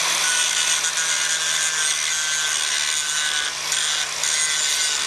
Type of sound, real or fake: real